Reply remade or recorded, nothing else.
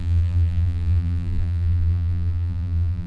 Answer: remade